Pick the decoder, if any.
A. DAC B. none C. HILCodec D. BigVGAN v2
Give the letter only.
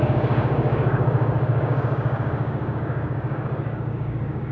A